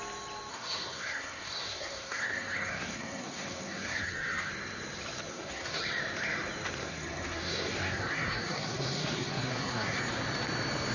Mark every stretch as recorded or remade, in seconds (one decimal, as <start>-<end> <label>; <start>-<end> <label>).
0.0-0.5 recorded; 0.5-4.5 remade; 4.5-5.3 recorded; 5.3-5.8 remade; 5.8-6.8 recorded; 6.8-10.0 remade; 10.0-10.9 recorded

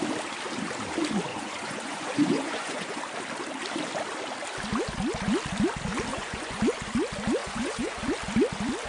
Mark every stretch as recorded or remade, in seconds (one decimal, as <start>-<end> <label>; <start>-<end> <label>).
0.0-1.3 recorded; 1.3-3.0 remade; 3.0-6.1 recorded; 6.1-6.6 remade; 6.6-7.4 recorded; 7.4-8.0 remade; 8.0-8.9 recorded

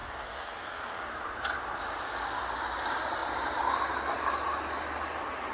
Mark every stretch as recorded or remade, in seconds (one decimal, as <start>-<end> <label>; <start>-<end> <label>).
0.0-1.0 remade; 1.0-5.5 recorded